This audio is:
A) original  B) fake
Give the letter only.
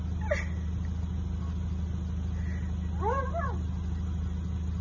A